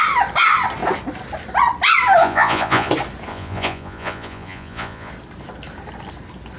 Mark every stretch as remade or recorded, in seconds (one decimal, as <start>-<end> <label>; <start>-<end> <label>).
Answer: 0.0-2.2 recorded; 2.2-2.9 remade; 2.9-3.3 recorded; 3.3-5.1 remade; 5.1-6.6 recorded